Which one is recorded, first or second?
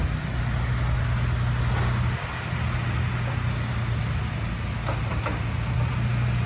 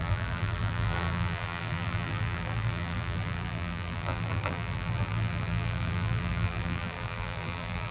first